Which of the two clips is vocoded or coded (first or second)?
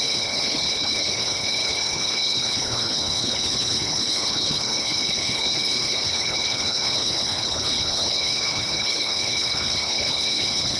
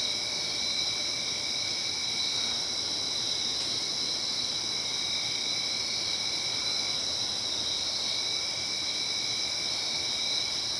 first